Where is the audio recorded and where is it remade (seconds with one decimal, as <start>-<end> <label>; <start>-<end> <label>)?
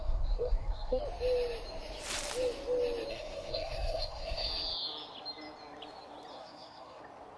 0.0-1.0 remade; 1.0-3.1 recorded; 3.1-4.5 remade; 4.5-6.3 recorded; 6.3-7.0 remade; 7.0-7.4 recorded